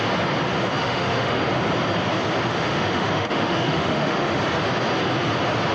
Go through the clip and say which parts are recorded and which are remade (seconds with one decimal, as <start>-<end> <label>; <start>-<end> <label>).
0.0-0.8 recorded; 0.8-1.4 remade; 1.4-2.5 recorded; 2.5-4.4 remade; 4.4-5.7 recorded